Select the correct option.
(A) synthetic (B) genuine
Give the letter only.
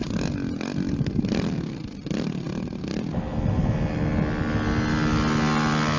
B